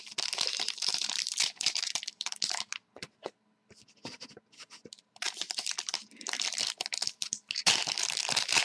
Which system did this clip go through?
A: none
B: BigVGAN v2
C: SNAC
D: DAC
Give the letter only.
A